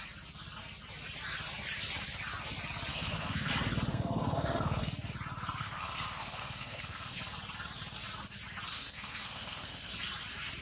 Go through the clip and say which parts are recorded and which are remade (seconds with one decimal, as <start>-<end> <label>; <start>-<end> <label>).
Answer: 0.0-2.9 recorded; 2.9-3.5 remade; 3.5-3.9 recorded; 3.9-4.9 remade; 4.9-5.6 recorded; 5.6-7.2 remade; 7.2-8.7 recorded; 8.7-9.9 remade; 9.9-10.6 recorded